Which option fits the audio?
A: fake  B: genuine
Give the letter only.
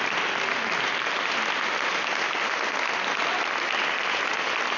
B